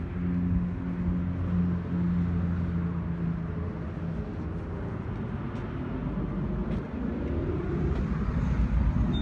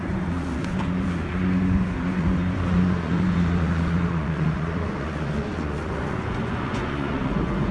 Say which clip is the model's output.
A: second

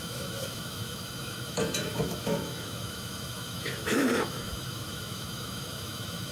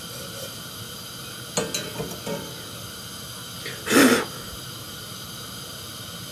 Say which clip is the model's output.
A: first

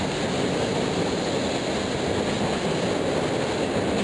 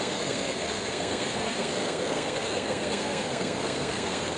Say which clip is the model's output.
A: second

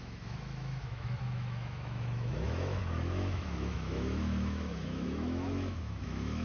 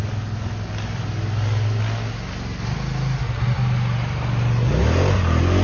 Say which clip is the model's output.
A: first